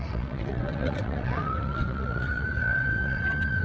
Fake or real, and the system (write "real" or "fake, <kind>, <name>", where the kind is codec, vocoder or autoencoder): fake, vocoder, WaveNeXt